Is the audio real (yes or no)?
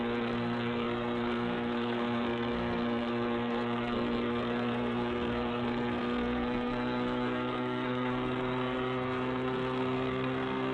no